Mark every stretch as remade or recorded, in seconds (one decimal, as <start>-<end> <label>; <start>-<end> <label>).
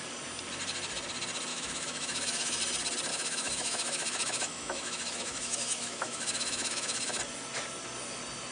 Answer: 0.0-1.5 recorded; 1.5-2.6 remade; 2.6-3.1 recorded; 3.1-7.2 remade; 7.2-8.5 recorded